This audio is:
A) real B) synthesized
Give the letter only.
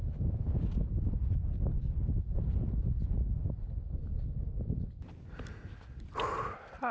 A